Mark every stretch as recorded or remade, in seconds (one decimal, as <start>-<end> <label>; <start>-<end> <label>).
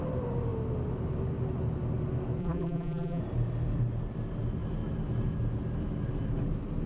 0.0-2.4 recorded; 2.4-3.2 remade; 3.2-6.9 recorded